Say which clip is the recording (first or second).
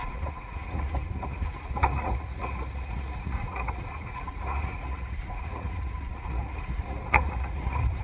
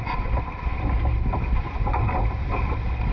second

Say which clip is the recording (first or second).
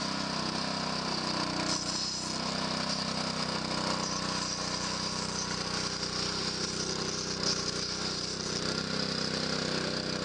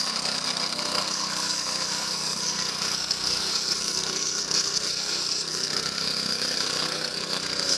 first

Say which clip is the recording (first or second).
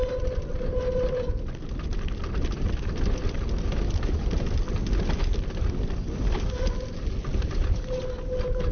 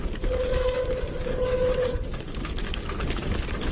first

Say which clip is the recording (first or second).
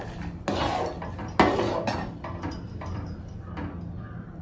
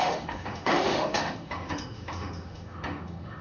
first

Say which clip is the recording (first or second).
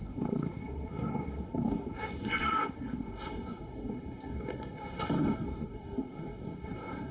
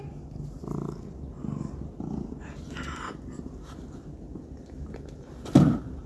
second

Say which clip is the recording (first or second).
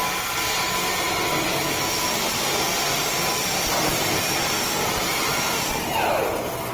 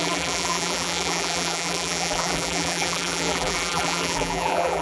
first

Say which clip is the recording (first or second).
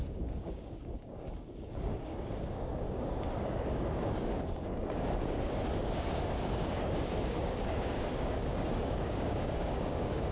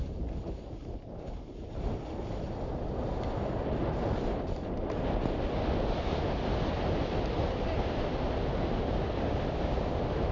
second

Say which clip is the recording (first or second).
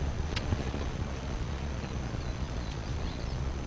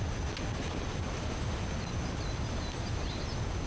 second